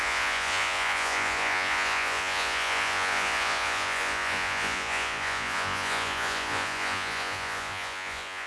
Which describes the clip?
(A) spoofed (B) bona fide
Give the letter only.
A